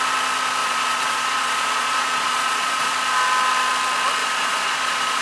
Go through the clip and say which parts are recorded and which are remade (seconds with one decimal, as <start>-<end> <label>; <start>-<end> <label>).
0.0-0.6 recorded; 0.6-2.9 remade; 2.9-4.2 recorded; 4.2-5.2 remade